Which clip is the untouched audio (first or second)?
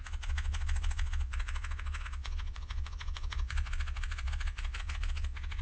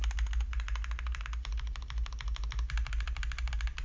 second